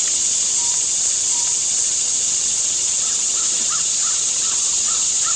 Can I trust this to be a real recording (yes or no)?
no